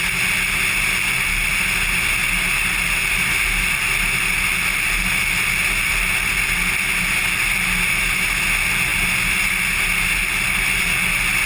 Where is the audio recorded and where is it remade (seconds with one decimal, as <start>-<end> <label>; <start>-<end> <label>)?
0.0-11.5 recorded

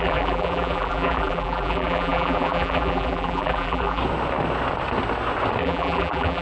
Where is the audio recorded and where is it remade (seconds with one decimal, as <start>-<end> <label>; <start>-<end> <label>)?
0.0-4.0 remade; 4.0-5.6 recorded; 5.6-6.4 remade

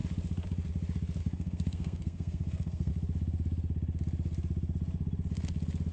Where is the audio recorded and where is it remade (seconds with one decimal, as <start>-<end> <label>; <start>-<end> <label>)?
0.0-1.2 recorded; 1.2-2.9 remade; 2.9-5.9 recorded

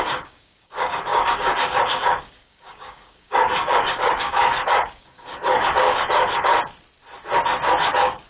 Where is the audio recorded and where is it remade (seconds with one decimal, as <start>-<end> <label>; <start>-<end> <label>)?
0.0-6.5 remade; 6.5-7.9 recorded; 7.9-8.3 remade

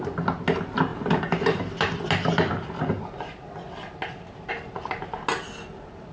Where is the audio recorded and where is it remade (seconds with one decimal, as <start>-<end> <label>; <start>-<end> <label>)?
0.0-6.1 recorded

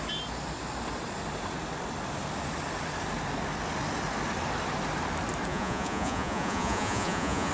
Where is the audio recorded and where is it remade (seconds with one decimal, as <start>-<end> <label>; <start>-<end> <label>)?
0.0-5.5 recorded; 5.5-7.5 remade